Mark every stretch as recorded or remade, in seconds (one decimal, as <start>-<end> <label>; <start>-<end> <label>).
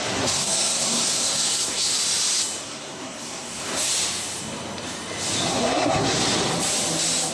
0.0-1.9 remade; 1.9-2.6 recorded; 2.6-3.9 remade; 3.9-5.5 recorded; 5.5-6.2 remade; 6.2-7.3 recorded